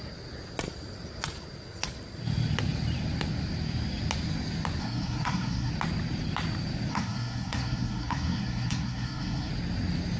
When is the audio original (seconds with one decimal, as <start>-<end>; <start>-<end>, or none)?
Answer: 0.0-4.8; 5.7-6.9; 9.5-10.2